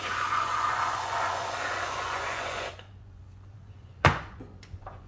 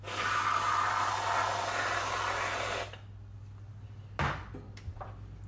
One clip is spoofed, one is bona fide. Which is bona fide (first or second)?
second